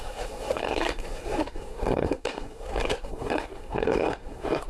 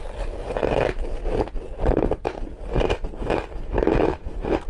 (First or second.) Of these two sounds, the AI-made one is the first